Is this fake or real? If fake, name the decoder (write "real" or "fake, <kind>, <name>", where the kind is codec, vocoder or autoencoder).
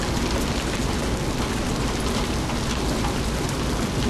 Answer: real